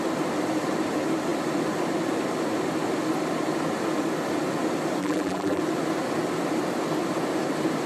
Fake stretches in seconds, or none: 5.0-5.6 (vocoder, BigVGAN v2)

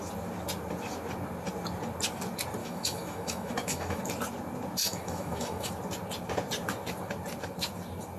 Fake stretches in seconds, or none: 2.6-4.0 (autoencoder, DAC-VAE); 4.8-5.7

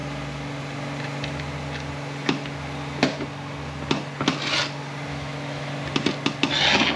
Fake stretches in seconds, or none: 5.1-5.7 (autoencoder, DAC-VAE)

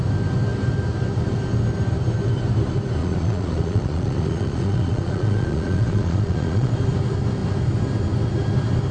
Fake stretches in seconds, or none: 3.0-6.7 (vocoder, Vocos)

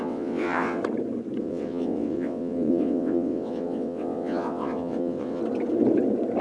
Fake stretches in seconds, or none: 0.0-0.8 (vocoder, WaveNeXt); 1.4-5.4

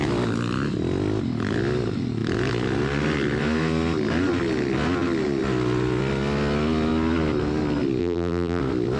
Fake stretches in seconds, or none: 8.0-8.6 (vocoder, BigVGAN v2)

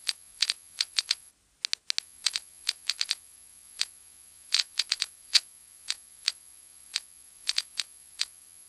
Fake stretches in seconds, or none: 0.0-1.3 (vocoder, Vocos); 2.0-8.7

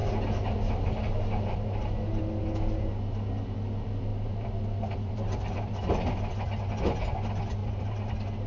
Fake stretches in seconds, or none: 4.1-5.7 (vocoder, BigVGAN v2); 7.6-8.1